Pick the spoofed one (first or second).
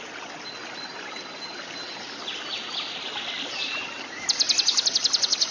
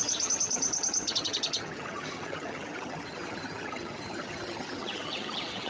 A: second